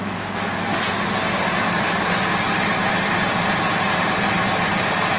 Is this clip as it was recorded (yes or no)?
yes